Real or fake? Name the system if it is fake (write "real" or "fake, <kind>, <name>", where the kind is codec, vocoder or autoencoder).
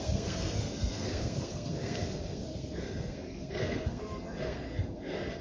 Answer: fake, codec, SNAC